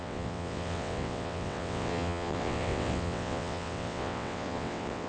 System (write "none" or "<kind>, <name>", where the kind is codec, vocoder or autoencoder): vocoder, WaveNeXt